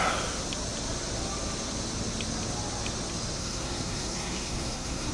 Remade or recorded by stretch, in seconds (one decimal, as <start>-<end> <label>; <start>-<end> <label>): 0.0-3.4 recorded; 3.4-5.1 remade